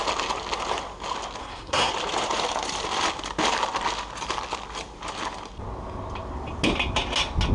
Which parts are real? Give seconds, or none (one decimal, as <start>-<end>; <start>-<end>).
0.0-1.4; 1.9-7.5